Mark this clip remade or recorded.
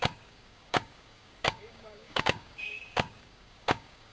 remade